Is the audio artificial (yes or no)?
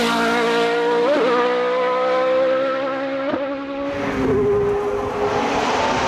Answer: no